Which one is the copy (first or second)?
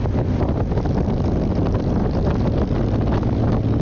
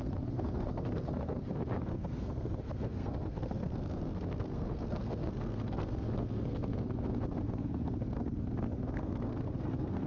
second